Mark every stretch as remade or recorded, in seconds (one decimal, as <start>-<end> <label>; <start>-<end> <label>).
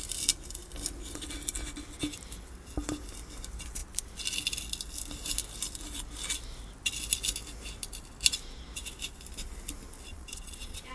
0.0-10.1 recorded; 10.1-10.9 remade